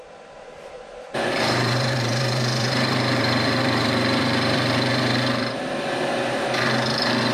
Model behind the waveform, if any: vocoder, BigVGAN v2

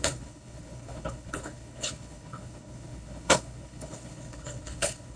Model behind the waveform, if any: codec, HILCodec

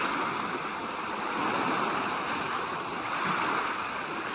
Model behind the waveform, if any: none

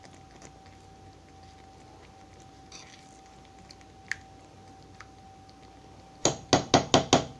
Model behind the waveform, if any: none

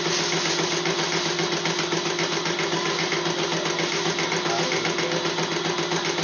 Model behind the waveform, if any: none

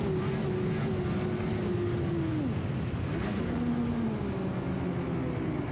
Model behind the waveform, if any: none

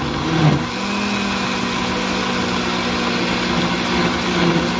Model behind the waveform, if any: none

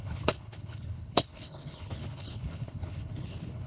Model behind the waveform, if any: codec, HILCodec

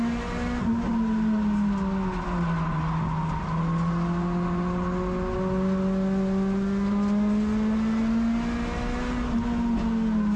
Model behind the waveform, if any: none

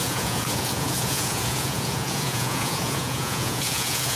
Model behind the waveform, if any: vocoder, Vocos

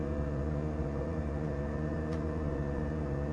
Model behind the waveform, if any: vocoder, Vocos